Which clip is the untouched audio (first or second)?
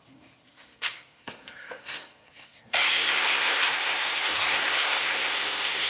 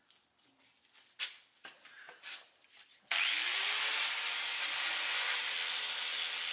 second